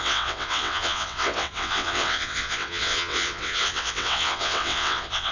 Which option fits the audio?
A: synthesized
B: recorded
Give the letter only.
A